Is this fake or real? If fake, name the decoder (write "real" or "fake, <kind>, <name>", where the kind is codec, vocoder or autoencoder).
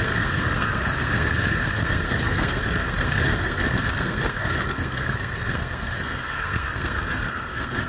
fake, codec, SNAC